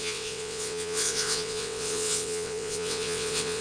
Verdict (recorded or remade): remade